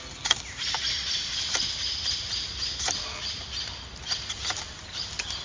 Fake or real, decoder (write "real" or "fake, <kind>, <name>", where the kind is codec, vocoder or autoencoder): real